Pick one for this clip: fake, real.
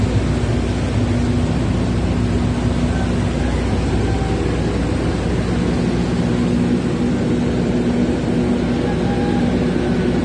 real